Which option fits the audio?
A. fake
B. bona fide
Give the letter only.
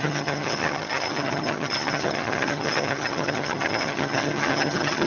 A